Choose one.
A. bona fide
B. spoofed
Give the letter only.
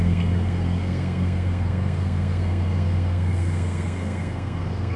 B